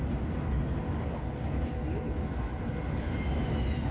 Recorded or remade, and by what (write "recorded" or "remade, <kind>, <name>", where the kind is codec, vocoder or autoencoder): recorded